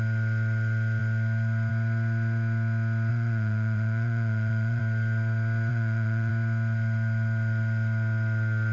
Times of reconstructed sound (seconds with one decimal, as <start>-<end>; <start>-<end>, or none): 3.1-4.8; 5.7-6.3